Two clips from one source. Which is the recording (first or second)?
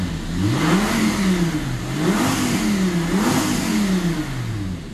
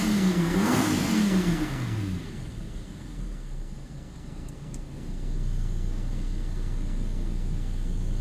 first